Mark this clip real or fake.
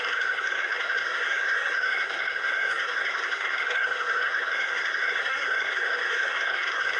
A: fake